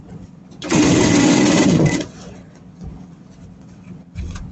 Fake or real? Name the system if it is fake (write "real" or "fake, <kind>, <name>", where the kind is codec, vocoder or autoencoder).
fake, vocoder, WaveNeXt